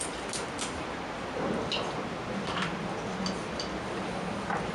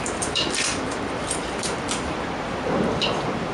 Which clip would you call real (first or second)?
first